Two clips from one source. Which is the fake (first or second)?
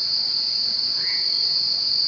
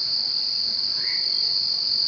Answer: first